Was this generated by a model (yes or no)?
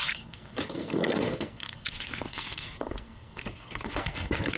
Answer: yes